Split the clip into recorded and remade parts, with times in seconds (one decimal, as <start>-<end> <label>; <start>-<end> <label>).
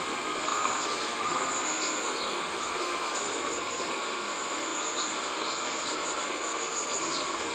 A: 0.0-7.5 remade